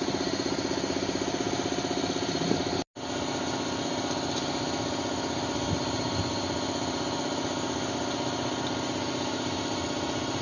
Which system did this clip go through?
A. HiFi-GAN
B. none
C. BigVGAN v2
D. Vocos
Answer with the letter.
B